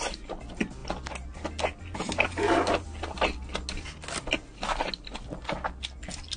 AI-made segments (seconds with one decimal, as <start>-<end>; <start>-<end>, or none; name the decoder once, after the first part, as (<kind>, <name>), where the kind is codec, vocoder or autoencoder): none